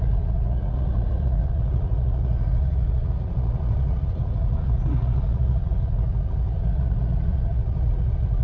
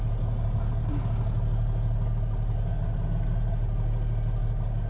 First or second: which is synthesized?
first